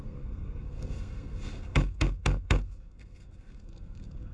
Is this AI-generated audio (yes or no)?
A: yes